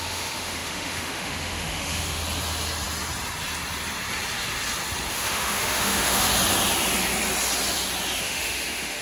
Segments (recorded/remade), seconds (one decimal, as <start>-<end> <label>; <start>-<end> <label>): 0.0-2.2 remade; 2.2-5.1 recorded; 5.1-6.3 remade; 6.3-8.2 recorded; 8.2-9.0 remade